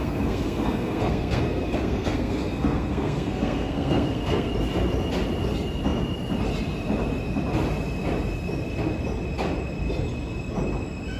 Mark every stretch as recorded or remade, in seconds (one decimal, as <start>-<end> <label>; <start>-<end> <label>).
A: 0.0-4.5 remade; 4.5-11.2 recorded

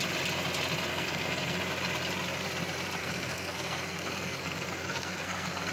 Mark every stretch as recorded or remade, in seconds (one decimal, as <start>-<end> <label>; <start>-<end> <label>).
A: 0.0-0.9 recorded; 0.9-1.6 remade; 1.6-3.0 recorded; 3.0-5.7 remade

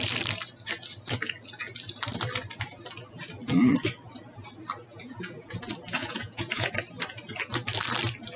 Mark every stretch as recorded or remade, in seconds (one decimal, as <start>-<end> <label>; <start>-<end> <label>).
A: 0.0-4.9 recorded; 4.9-5.6 remade; 5.6-6.0 recorded; 6.0-6.7 remade; 6.7-8.4 recorded

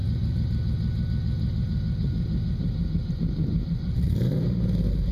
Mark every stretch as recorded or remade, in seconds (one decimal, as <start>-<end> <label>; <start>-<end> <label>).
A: 0.0-3.1 recorded; 3.1-5.1 remade

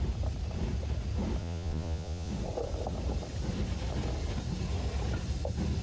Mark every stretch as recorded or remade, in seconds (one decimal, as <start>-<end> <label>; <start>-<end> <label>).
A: 0.0-1.4 recorded; 1.4-2.3 remade; 2.3-5.8 recorded